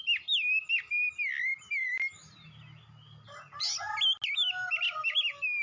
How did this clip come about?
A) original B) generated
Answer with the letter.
A